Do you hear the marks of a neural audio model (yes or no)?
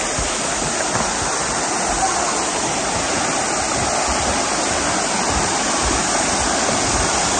no